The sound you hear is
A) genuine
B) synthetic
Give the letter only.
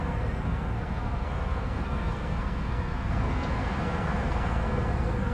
B